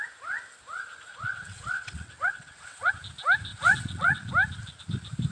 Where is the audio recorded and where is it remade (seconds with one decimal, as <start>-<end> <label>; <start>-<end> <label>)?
0.0-1.1 recorded; 1.1-2.9 remade; 2.9-3.5 recorded; 3.5-4.3 remade; 4.3-5.3 recorded